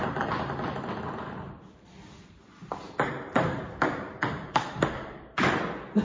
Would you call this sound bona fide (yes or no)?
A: yes